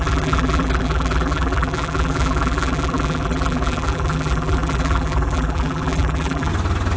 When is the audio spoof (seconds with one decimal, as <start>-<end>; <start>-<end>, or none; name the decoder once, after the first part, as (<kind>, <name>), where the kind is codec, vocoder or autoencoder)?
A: 0.0-6.5 (vocoder, BigVGAN v2)

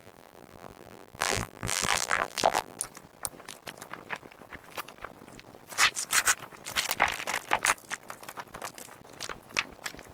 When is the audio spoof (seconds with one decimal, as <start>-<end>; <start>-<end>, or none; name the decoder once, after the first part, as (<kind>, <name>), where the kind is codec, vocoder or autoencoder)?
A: 0.0-2.8 (vocoder, BigVGAN v2)

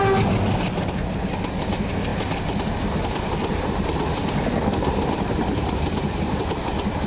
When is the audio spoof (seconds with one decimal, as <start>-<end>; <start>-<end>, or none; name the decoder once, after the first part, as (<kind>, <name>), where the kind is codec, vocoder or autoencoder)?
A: 2.1-6.4 (vocoder, BigVGAN v2)

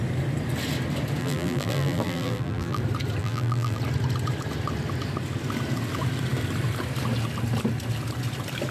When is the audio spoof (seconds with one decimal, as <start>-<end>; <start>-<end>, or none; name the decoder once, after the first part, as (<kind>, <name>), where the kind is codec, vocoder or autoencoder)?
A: 1.2-2.8 (vocoder, BigVGAN v2); 3.2-3.8

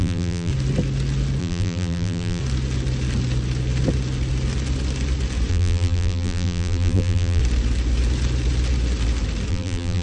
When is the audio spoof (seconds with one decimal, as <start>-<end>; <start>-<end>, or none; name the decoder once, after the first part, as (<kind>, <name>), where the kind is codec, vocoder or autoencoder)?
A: 0.0-0.5 (vocoder, BigVGAN v2); 1.4-2.4; 5.5-7.4; 9.5-10.0

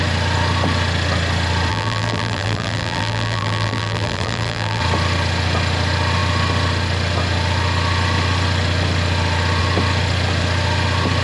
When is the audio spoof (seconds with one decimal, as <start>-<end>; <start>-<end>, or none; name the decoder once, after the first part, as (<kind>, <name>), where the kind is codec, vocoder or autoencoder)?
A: 1.7-4.8 (vocoder, BigVGAN v2)

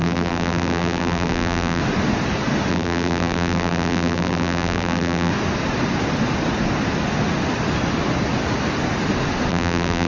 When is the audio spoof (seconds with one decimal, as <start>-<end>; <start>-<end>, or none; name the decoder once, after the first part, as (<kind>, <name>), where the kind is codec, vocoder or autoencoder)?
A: 0.0-1.8 (vocoder, BigVGAN v2); 2.7-5.3; 9.5-10.1

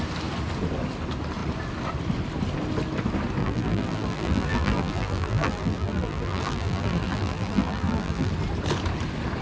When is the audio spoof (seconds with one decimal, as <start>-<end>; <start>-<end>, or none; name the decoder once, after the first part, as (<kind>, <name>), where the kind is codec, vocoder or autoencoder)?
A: 3.4-8.3 (vocoder, BigVGAN v2)